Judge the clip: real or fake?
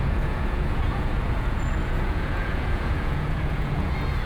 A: fake